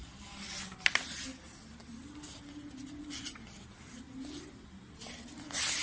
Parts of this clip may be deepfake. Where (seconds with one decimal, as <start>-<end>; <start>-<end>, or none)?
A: 0.0-0.5; 1.3-4.8